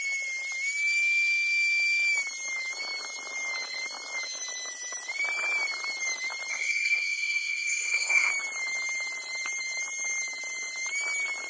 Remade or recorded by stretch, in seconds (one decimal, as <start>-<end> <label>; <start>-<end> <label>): 0.0-6.5 recorded; 6.5-8.3 remade; 8.3-11.5 recorded